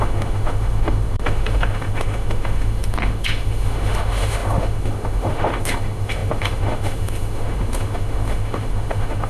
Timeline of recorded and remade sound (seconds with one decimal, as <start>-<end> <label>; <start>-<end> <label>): 0.0-9.3 remade